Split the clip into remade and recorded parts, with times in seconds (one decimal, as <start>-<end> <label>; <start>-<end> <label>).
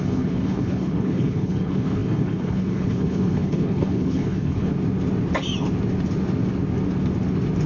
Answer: 0.0-4.7 remade; 4.7-7.7 recorded